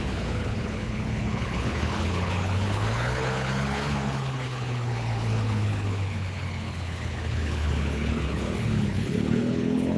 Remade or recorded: remade